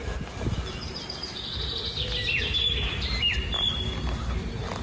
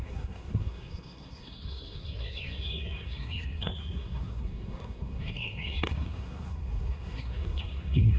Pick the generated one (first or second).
second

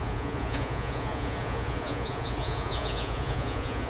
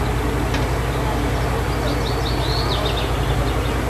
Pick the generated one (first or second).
first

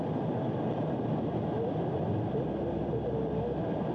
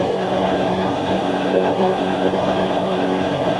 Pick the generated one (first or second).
second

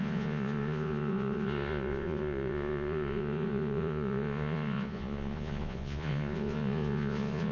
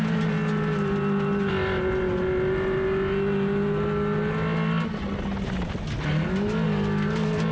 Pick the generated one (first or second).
first